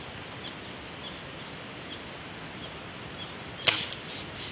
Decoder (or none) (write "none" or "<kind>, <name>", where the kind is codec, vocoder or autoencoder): none